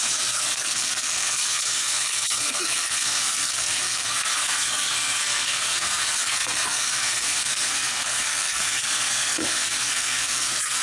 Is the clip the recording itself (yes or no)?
no